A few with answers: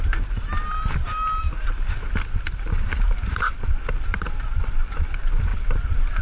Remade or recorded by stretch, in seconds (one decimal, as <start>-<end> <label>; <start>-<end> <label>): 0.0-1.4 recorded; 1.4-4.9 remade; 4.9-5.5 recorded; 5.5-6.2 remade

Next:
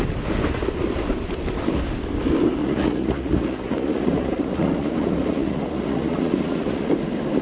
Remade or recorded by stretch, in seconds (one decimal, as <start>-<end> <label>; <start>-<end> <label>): 0.0-2.6 recorded; 2.6-6.9 remade; 6.9-7.4 recorded

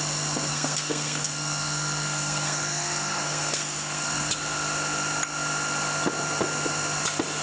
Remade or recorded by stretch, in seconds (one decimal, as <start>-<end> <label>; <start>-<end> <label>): 0.0-0.5 recorded; 0.5-4.3 remade; 4.3-7.4 recorded

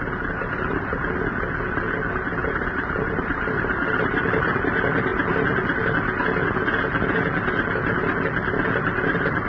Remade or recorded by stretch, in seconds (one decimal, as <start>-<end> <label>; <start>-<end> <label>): 0.0-2.4 recorded; 2.4-3.6 remade; 3.6-9.5 recorded

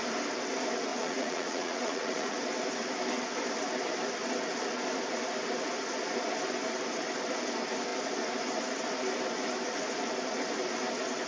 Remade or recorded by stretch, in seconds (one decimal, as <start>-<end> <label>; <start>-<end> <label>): 0.0-0.9 recorded; 0.9-2.4 remade; 2.4-11.3 recorded